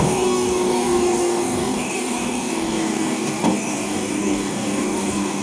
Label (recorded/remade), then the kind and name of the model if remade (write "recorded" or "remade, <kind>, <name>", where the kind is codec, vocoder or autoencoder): remade, codec, DAC